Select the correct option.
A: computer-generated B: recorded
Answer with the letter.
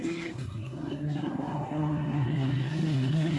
A